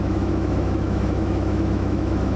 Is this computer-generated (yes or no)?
yes